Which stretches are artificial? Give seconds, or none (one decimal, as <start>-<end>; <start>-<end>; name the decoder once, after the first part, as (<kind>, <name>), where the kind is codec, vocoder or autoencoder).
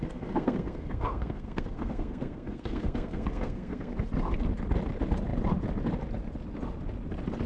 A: 0.0-3.9 (codec, SNAC)